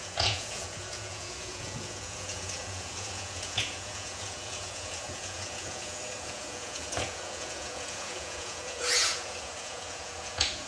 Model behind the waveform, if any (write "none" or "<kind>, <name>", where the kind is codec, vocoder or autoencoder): vocoder, Vocos